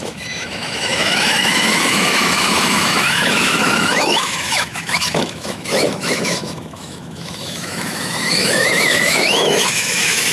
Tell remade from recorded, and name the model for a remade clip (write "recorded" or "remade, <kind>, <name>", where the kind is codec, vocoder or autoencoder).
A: remade, autoencoder, DAC-VAE